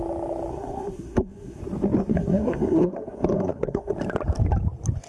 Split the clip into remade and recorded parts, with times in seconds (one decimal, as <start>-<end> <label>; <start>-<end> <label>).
0.0-0.5 recorded; 0.5-1.6 remade; 1.6-2.1 recorded; 2.1-3.9 remade; 3.9-5.1 recorded